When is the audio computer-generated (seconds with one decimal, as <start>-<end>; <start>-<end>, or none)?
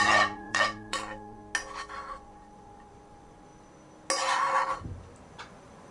0.0-1.4; 2.1-3.5; 5.3-5.9